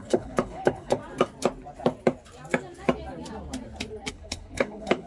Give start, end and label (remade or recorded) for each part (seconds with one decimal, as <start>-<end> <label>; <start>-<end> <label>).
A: 0.0-1.0 remade; 1.0-4.1 recorded; 4.1-5.1 remade